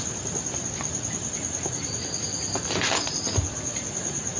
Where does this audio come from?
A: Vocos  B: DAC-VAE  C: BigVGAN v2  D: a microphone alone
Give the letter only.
D